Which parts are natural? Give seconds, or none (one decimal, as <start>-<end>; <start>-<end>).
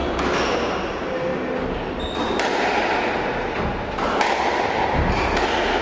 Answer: 0.0-5.8